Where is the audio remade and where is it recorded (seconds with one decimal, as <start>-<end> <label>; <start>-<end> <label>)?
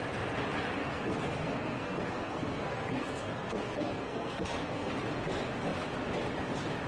0.0-0.8 recorded; 0.8-4.9 remade; 4.9-6.9 recorded